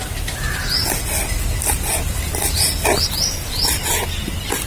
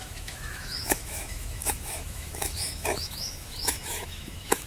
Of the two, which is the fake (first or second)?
second